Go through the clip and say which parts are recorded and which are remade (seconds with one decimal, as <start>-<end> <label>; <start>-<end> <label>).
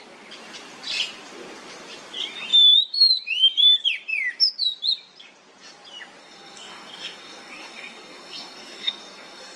0.0-6.2 recorded; 6.2-9.6 remade